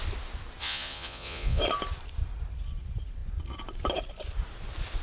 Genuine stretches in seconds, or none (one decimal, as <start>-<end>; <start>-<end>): 0.0-0.6; 1.6-5.0